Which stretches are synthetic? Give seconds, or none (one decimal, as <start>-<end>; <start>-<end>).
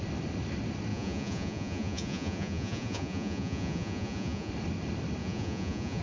0.9-4.5; 5.2-6.0